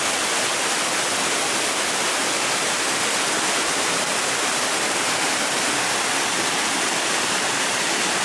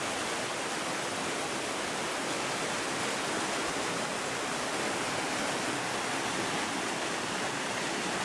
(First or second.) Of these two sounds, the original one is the second